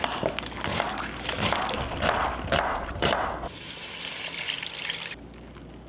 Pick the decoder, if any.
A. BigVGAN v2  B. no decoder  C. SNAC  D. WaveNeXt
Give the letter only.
B